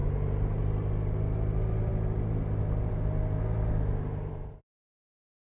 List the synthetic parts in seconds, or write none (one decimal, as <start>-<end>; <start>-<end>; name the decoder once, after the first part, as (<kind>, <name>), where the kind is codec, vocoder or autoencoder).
none